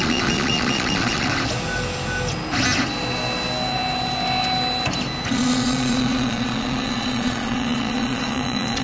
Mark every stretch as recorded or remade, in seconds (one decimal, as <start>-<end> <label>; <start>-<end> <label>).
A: 0.0-1.3 remade; 1.3-5.3 recorded; 5.3-8.8 remade